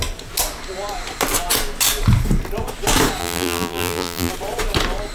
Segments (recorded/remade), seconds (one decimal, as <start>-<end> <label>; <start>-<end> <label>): 0.0-3.2 recorded; 3.2-4.3 remade; 4.3-5.1 recorded